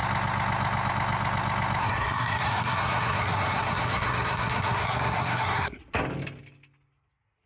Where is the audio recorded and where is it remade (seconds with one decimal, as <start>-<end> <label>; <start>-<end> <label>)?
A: 0.0-1.8 recorded; 1.8-5.8 remade; 5.8-7.5 recorded